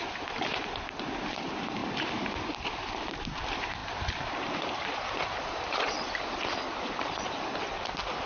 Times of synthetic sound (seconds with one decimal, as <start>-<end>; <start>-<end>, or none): 0.0-1.8; 2.3-8.3